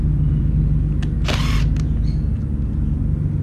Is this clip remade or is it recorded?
recorded